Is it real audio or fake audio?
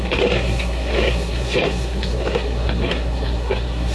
fake